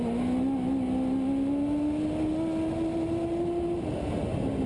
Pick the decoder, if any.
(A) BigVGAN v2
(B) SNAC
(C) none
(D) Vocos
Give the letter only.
C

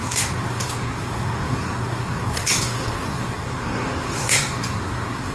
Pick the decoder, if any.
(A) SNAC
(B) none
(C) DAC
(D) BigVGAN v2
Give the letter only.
A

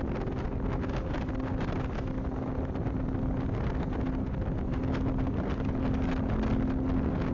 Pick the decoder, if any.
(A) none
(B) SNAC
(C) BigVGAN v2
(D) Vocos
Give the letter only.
A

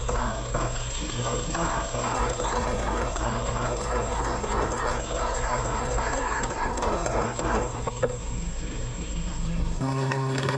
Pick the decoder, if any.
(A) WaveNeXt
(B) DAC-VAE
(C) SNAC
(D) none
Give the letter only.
C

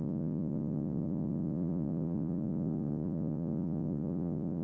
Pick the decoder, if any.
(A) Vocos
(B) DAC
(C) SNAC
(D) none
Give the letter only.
A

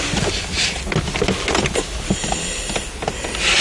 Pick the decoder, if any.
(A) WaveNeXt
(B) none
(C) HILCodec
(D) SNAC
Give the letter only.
B